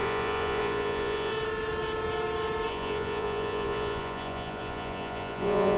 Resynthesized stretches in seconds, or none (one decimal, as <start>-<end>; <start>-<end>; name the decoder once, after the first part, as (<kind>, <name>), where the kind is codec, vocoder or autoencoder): 0.0-1.3 (vocoder, Vocos); 2.7-5.8